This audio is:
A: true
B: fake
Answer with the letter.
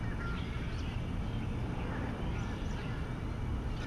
A